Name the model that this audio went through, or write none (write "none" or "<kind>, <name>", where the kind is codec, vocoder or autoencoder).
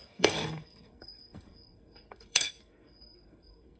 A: codec, SNAC